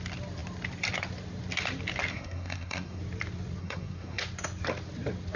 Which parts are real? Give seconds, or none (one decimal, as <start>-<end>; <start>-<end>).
0.0-2.1; 3.0-3.6; 4.2-5.4